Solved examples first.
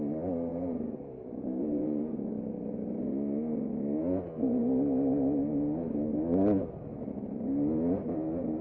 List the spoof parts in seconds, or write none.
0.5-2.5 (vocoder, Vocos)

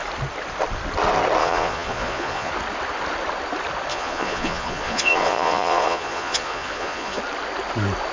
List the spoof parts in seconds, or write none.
1.4-2.5 (vocoder, Vocos); 3.9-7.2

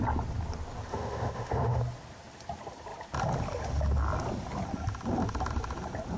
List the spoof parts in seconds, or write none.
0.9-1.8 (autoencoder, DAC-VAE)

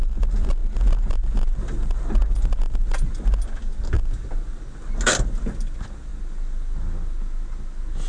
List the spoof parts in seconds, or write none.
none